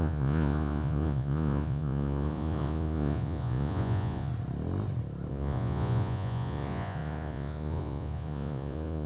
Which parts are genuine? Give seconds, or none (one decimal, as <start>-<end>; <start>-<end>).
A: 4.3-5.3